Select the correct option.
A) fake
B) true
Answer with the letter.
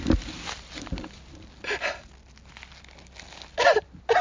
B